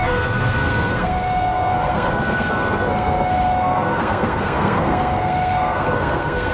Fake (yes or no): yes